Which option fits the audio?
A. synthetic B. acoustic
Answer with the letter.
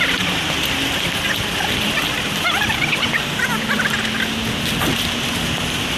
B